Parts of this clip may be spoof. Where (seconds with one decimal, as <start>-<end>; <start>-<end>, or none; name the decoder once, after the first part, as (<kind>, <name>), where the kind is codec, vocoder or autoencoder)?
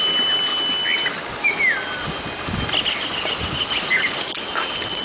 none